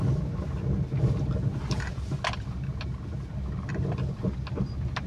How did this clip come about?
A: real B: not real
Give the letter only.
A